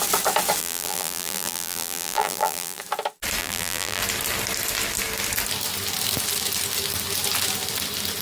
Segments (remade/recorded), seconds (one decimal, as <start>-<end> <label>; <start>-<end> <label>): 0.0-0.6 recorded; 0.6-2.8 remade; 2.8-3.4 recorded; 3.4-4.0 remade; 4.0-8.2 recorded